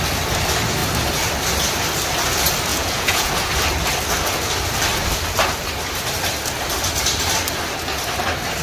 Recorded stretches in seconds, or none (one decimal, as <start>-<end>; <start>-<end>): 0.0-2.7; 3.3-8.6